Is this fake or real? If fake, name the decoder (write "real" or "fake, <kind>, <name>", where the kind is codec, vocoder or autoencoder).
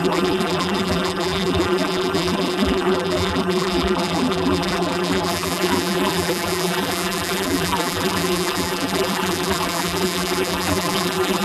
fake, vocoder, BigVGAN v2